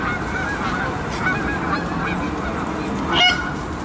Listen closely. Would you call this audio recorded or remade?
recorded